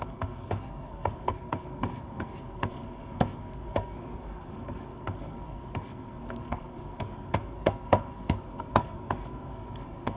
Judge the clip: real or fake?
fake